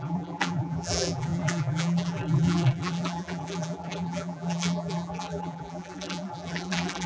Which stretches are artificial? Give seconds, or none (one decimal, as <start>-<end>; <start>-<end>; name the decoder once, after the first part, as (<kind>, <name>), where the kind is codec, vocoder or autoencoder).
0.0-7.1 (vocoder, BigVGAN v2)